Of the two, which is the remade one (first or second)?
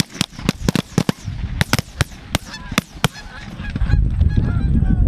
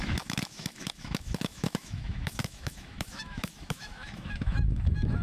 second